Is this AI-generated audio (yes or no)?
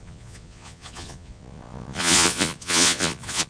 yes